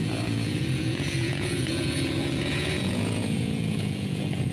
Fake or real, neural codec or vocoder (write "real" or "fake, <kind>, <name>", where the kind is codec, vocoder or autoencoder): fake, vocoder, Vocos